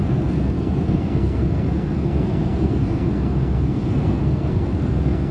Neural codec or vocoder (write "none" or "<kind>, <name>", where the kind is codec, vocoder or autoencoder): codec, SNAC